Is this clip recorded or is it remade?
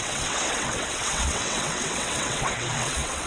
remade